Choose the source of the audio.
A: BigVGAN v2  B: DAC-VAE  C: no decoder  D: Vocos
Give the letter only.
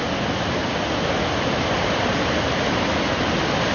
C